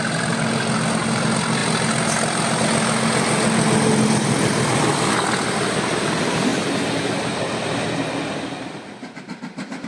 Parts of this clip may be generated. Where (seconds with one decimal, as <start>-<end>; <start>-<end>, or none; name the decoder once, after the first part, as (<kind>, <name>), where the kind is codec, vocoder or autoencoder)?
none